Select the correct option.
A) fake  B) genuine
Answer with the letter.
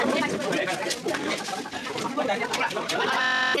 B